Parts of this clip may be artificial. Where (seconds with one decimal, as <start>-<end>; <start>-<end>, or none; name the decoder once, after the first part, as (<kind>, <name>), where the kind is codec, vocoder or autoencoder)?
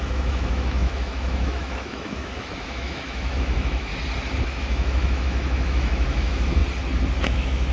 0.0-3.9 (autoencoder, DAC-VAE); 4.4-6.6; 7.2-7.7